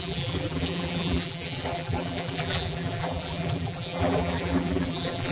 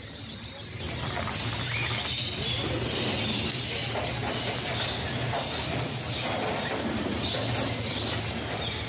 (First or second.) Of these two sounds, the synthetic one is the first